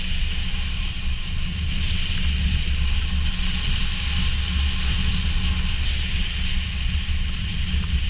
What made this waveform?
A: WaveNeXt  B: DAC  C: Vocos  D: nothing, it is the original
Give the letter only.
D